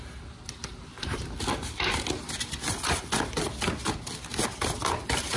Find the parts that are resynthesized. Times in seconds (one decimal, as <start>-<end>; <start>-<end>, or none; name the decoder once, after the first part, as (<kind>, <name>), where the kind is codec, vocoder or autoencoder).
0.7-1.9 (vocoder, BigVGAN v2)